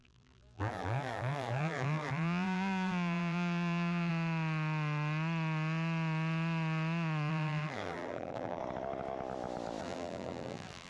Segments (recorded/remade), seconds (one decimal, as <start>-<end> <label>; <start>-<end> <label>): 0.0-4.1 remade; 4.1-7.3 recorded; 7.3-8.6 remade; 8.6-9.8 recorded; 9.8-10.9 remade